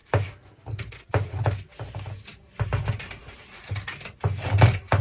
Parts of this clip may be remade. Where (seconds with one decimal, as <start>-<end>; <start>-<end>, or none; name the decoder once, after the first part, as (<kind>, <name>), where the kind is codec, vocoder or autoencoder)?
none